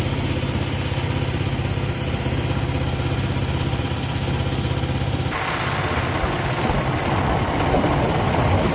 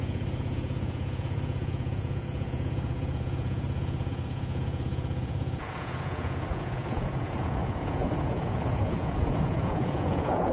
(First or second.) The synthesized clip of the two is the second